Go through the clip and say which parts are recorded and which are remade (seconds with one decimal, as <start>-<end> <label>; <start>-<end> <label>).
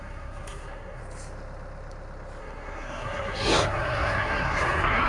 0.0-1.0 remade; 1.0-2.4 recorded; 2.4-5.1 remade